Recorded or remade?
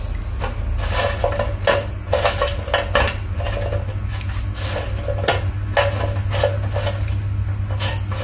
recorded